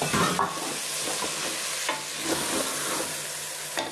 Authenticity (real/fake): real